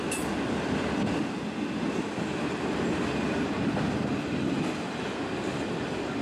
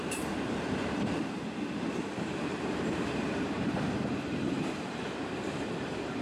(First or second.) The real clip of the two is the first